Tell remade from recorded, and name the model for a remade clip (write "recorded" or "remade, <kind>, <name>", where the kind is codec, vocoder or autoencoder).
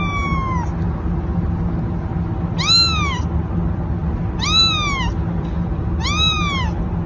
recorded